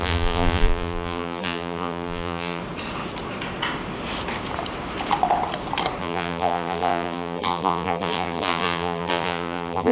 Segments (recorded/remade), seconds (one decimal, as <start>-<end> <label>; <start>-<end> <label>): 0.0-2.6 remade; 2.6-6.0 recorded; 6.0-9.9 remade